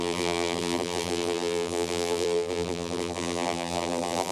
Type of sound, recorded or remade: remade